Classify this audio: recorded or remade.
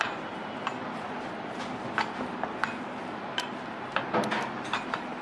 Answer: recorded